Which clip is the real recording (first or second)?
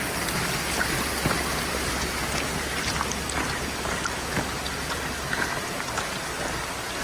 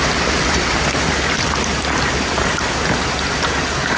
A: first